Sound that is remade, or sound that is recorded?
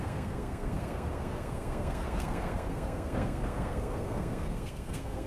remade